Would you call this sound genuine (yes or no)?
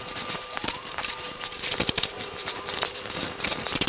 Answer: no